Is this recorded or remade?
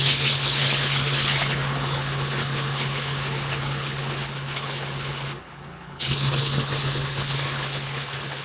remade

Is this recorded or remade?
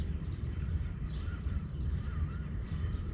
remade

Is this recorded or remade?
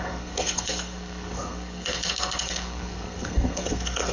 remade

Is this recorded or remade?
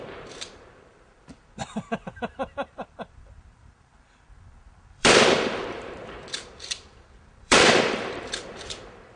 remade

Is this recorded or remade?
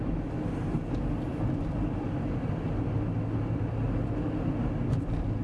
recorded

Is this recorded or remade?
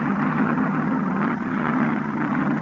remade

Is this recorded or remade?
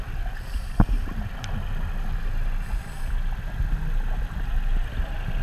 recorded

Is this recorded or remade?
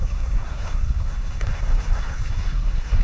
remade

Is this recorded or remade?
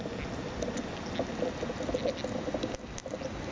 recorded